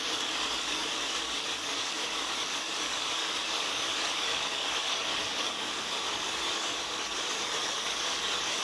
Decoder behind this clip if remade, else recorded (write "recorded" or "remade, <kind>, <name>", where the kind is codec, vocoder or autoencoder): remade, codec, DAC